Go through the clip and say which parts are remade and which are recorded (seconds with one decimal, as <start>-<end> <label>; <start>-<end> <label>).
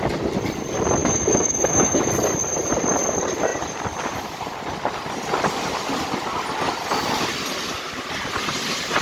0.0-1.0 recorded; 1.0-2.1 remade; 2.1-9.0 recorded